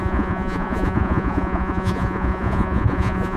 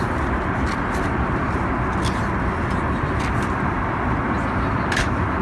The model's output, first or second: first